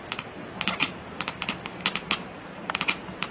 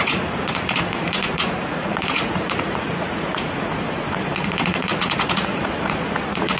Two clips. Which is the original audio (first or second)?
first